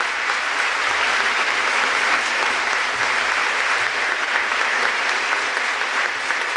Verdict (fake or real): real